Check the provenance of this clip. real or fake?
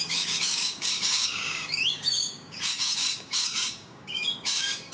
fake